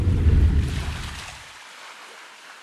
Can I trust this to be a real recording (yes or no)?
yes